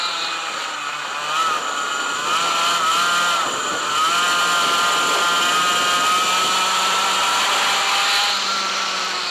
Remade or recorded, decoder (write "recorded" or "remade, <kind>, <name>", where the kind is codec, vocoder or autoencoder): recorded